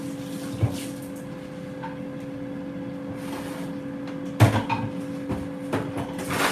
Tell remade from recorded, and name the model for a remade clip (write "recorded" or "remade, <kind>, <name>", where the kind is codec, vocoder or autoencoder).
recorded